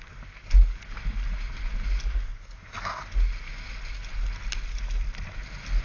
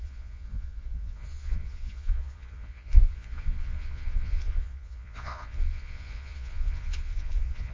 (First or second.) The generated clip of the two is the second